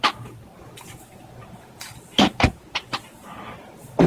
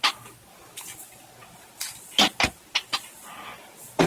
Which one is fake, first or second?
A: first